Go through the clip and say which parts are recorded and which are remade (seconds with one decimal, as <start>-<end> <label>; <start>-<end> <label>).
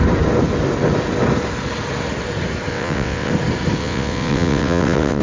0.0-2.7 recorded; 2.7-3.3 remade; 3.3-3.8 recorded; 3.8-5.2 remade